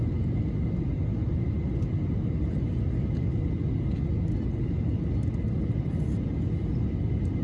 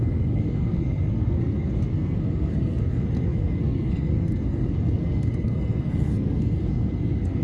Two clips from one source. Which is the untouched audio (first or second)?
first